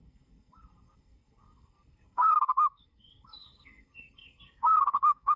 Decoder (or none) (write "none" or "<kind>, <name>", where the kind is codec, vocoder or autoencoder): codec, SNAC